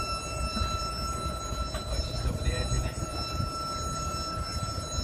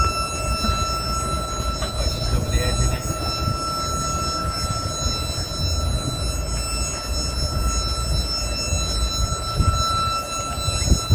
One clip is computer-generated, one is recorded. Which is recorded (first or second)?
second